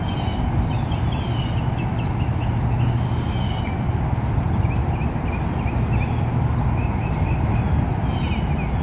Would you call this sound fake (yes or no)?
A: no